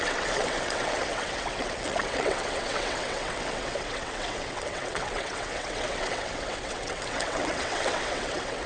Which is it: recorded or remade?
remade